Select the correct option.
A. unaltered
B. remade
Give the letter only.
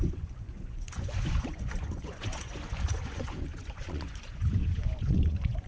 B